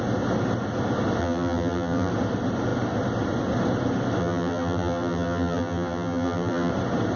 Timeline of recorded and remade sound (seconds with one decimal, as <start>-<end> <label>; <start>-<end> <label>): 0.0-1.2 recorded; 1.2-2.1 remade; 2.1-4.2 recorded; 4.2-6.7 remade; 6.7-7.2 recorded